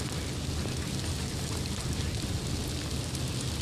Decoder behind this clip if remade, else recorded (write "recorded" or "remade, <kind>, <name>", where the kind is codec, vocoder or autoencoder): recorded